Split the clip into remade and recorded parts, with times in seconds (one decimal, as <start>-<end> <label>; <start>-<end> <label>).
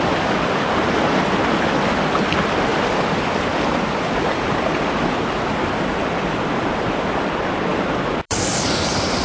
0.0-2.7 recorded; 2.7-7.3 remade; 7.3-7.7 recorded; 7.7-8.4 remade; 8.4-9.2 recorded